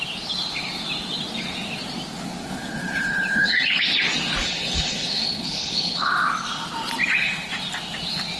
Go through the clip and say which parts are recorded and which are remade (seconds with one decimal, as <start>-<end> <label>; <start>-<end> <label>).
0.0-2.4 recorded; 2.4-3.8 remade; 3.8-4.4 recorded; 4.4-6.1 remade; 6.1-8.4 recorded